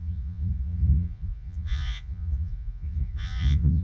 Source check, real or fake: fake